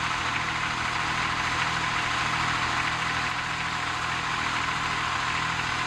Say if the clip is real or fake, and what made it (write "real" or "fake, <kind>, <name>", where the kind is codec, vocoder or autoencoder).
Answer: real